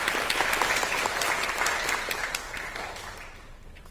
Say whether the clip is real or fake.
real